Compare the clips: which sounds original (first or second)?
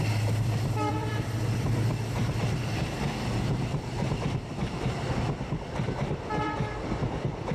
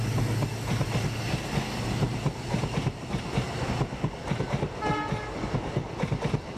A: second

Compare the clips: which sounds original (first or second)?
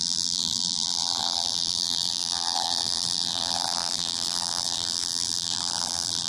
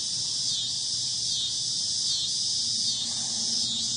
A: second